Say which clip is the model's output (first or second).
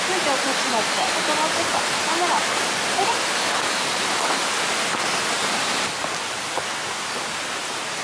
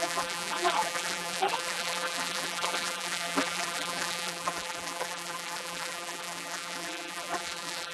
second